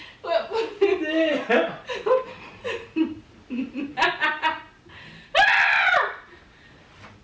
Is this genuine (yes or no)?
yes